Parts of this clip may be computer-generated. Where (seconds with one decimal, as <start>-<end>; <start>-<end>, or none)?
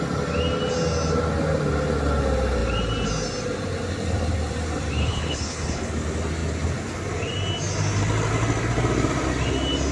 5.0-5.9